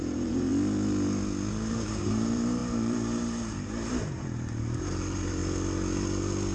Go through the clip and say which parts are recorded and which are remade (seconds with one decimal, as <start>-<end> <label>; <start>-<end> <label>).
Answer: 0.0-0.5 remade; 0.5-1.5 recorded; 1.5-5.4 remade; 5.4-6.5 recorded